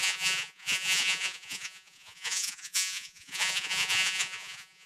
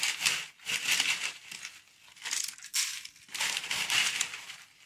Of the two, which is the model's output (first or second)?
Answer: first